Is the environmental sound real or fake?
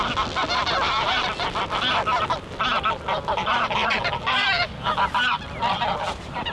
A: real